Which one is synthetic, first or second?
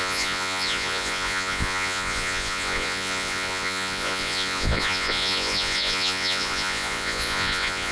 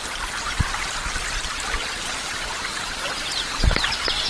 first